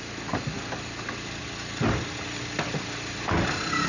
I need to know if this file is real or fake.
real